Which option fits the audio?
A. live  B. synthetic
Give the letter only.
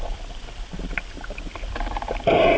B